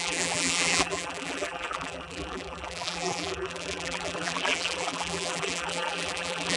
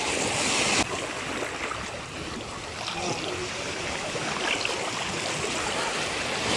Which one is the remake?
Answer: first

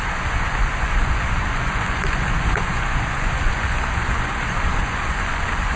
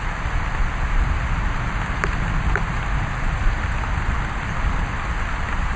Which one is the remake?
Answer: first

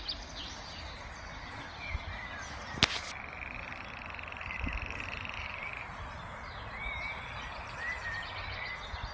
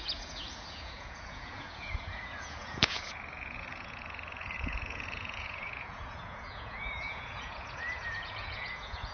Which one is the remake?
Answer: second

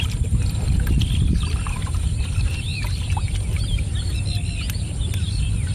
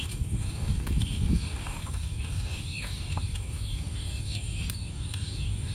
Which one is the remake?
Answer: second